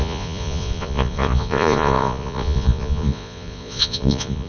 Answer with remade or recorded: remade